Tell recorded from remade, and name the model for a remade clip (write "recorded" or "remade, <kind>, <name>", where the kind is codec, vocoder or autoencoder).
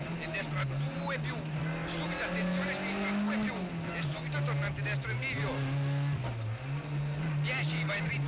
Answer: recorded